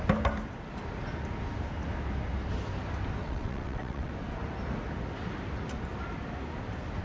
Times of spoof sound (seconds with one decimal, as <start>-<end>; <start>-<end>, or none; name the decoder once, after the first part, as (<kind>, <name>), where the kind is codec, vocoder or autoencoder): 3.2-4.1 (vocoder, WaveNeXt)